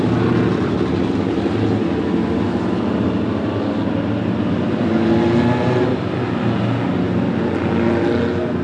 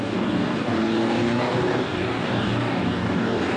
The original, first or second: first